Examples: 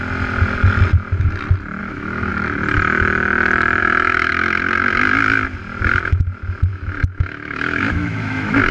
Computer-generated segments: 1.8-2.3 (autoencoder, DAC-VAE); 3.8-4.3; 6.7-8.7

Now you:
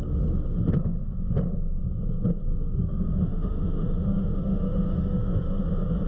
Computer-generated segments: 2.5-5.6 (autoencoder, DAC-VAE)

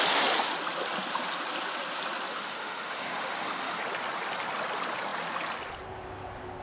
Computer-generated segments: 2.3-3.8 (autoencoder, DAC-VAE)